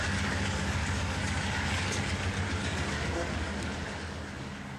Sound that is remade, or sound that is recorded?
remade